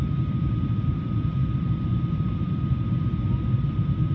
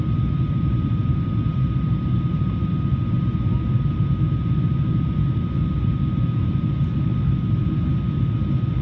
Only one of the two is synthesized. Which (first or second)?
first